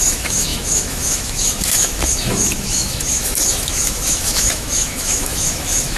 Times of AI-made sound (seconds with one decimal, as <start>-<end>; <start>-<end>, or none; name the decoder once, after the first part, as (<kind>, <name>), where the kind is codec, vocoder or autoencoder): 0.0-6.0 (autoencoder, DAC-VAE)